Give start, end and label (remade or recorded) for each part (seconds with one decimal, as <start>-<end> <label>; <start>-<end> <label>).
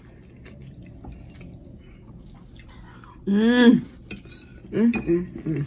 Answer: 0.0-5.7 recorded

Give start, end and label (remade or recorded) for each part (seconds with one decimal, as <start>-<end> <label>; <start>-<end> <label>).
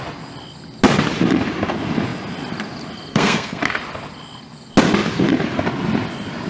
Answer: 0.0-3.1 recorded; 3.1-3.6 remade; 3.6-6.5 recorded